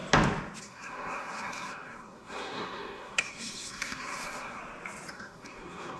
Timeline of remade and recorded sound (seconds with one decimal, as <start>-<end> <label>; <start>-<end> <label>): 0.0-0.6 recorded; 0.6-4.6 remade; 4.6-5.1 recorded; 5.1-6.0 remade